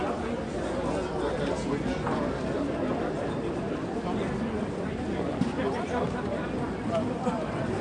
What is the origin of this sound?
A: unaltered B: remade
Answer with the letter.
A